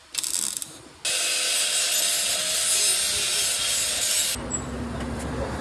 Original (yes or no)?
yes